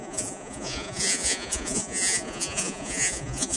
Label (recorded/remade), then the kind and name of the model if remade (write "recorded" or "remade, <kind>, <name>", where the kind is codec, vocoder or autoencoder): remade, vocoder, Vocos